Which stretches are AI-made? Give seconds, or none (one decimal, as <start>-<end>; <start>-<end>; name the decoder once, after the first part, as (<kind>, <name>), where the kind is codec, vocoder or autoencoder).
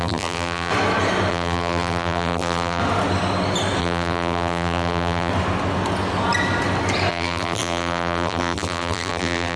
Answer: 0.0-0.7 (vocoder, BigVGAN v2); 1.3-2.8; 3.8-5.3; 7.1-9.6